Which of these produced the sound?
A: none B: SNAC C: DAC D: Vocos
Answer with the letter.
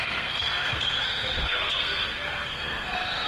B